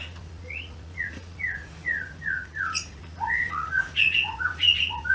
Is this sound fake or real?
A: fake